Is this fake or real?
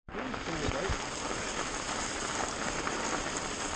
real